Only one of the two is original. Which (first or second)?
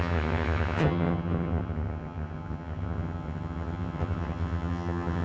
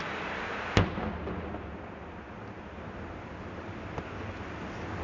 second